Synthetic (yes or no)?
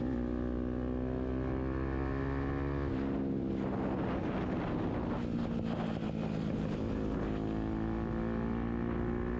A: no